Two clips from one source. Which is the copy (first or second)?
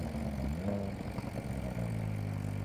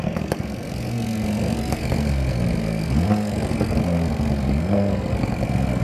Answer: second